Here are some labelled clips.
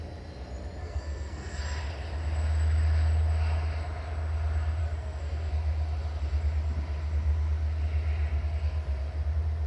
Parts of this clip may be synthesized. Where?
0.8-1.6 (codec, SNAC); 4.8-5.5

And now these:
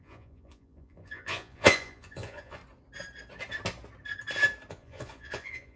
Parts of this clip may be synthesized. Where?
0.0-2.6 (vocoder, Vocos); 4.7-5.8